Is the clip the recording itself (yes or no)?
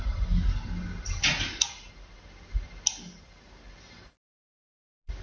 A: yes